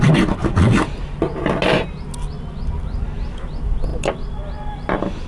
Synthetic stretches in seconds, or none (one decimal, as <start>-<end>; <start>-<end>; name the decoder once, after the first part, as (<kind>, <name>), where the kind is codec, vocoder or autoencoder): none